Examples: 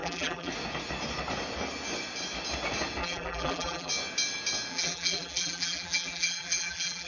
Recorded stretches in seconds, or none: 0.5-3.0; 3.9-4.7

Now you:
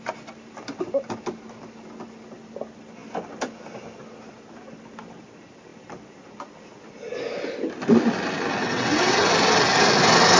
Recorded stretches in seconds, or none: 0.0-8.6; 9.2-10.4

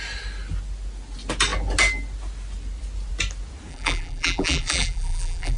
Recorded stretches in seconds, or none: 0.0-3.7

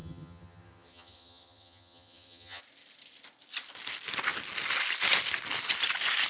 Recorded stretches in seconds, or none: 2.6-6.3

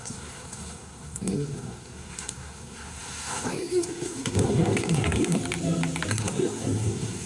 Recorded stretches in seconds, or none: 5.4-6.1